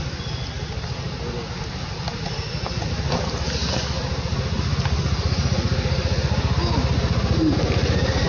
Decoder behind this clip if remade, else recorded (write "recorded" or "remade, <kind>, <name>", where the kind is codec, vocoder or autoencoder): recorded